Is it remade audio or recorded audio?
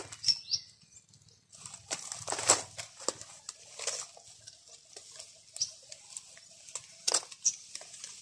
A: recorded